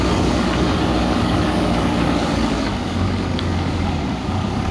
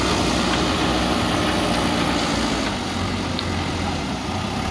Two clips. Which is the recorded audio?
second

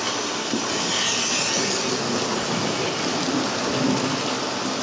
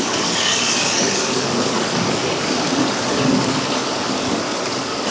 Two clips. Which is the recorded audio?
first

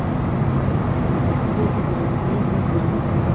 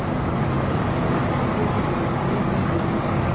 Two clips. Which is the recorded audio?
first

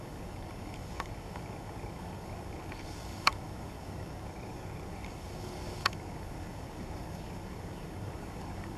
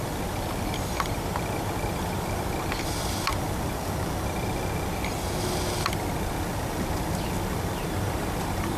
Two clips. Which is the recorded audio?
second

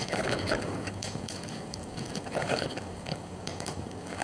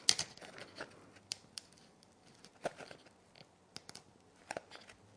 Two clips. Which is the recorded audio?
second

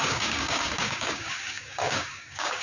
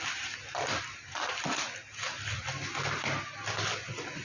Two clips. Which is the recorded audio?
second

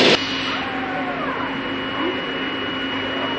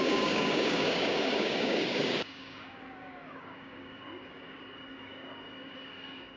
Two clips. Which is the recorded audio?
first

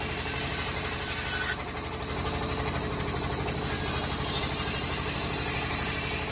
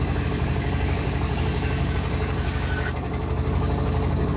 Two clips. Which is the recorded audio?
first